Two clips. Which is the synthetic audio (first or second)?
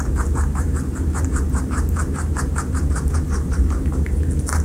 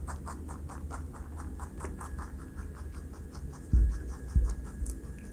first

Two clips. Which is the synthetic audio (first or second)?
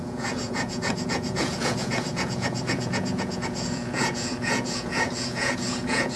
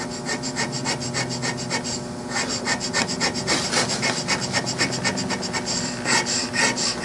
first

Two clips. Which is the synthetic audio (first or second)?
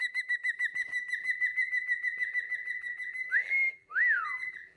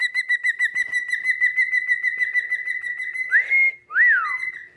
first